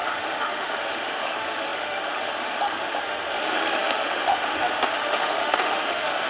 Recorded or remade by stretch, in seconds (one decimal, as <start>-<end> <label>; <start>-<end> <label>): 0.0-6.3 remade